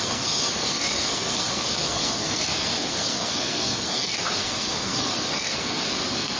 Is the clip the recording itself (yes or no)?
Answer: no